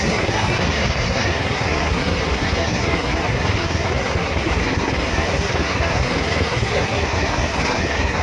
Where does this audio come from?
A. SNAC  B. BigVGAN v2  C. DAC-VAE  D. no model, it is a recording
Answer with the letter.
A